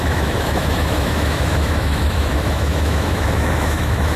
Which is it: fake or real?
fake